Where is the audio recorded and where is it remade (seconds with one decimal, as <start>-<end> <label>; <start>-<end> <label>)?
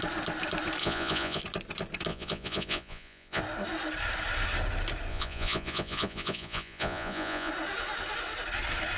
0.0-0.8 recorded; 0.8-1.4 remade; 1.4-2.1 recorded; 2.1-3.4 remade; 3.4-5.1 recorded; 5.1-7.5 remade; 7.5-9.0 recorded